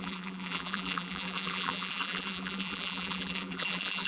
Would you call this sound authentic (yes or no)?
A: no